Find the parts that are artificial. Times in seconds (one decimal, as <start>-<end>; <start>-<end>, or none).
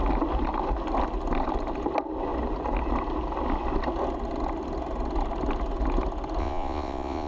6.4-7.3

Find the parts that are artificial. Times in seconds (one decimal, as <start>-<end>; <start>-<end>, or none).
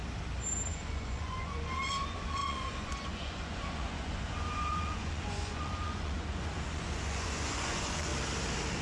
0.7-8.1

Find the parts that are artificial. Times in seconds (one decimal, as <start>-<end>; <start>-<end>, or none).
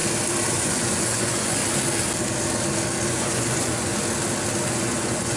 0.5-1.6; 3.1-3.9; 4.7-5.4